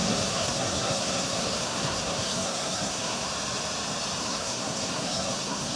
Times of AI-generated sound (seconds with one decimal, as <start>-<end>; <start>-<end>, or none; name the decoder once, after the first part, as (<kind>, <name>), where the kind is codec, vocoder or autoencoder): 0.0-3.3 (codec, SNAC); 4.2-5.8